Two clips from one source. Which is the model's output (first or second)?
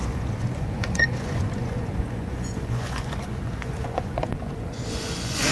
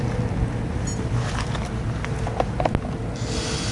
first